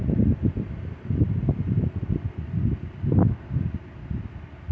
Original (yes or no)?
yes